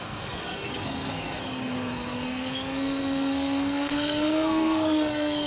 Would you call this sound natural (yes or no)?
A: no